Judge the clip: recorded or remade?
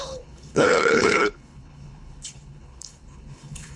remade